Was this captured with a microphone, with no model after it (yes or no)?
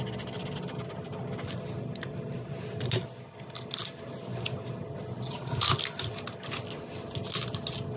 yes